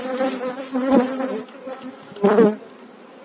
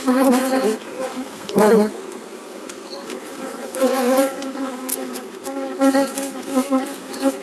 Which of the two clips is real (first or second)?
first